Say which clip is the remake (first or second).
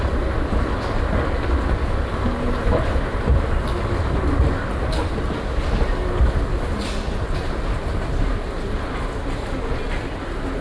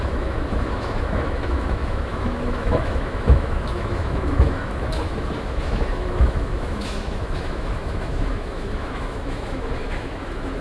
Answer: second